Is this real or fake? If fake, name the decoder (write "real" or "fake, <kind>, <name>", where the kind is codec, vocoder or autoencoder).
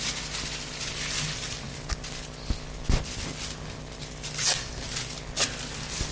real